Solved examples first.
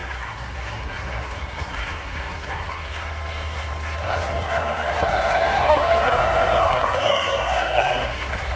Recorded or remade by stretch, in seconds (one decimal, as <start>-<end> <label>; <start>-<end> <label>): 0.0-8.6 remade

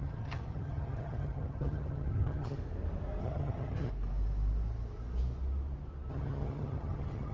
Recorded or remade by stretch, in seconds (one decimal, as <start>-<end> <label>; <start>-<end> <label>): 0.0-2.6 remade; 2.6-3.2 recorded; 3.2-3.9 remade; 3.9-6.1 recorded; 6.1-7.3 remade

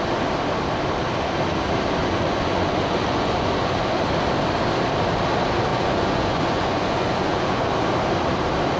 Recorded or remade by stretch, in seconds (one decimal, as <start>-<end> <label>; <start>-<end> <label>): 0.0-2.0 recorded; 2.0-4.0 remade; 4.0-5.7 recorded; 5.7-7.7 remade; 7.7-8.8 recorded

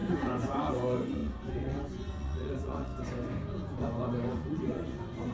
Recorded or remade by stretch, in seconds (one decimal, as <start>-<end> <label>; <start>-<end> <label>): 0.0-2.9 remade; 2.9-3.6 recorded; 3.6-5.3 remade

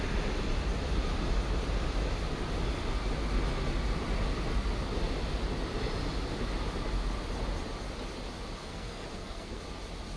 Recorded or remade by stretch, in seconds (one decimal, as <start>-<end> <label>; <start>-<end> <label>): 0.0-8.6 recorded; 8.6-9.6 remade; 9.6-10.2 recorded

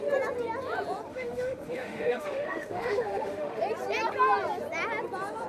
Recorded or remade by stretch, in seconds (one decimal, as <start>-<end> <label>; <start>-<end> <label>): 0.0-1.1 recorded; 1.1-3.6 remade; 3.6-5.5 recorded

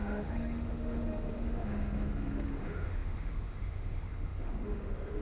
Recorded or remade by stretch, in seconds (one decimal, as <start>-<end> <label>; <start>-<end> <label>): 0.0-5.2 remade

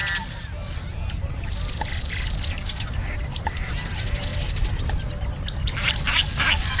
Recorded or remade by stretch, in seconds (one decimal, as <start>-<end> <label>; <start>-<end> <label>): 0.0-6.8 recorded